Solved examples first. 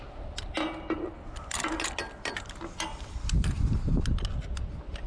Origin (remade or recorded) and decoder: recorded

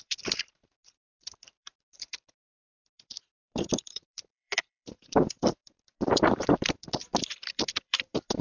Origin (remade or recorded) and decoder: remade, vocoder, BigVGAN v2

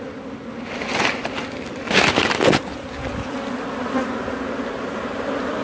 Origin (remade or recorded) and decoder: recorded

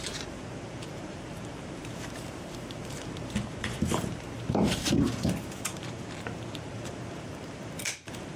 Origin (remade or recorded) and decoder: remade, vocoder, BigVGAN v2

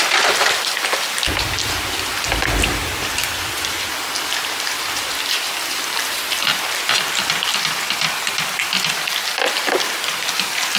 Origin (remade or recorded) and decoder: recorded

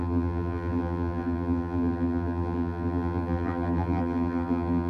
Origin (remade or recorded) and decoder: remade, vocoder, BigVGAN v2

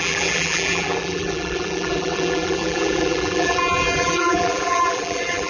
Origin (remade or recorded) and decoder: remade, vocoder, BigVGAN v2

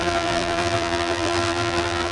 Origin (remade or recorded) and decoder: remade, vocoder, BigVGAN v2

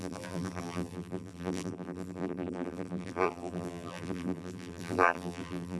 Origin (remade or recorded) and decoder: remade, vocoder, BigVGAN v2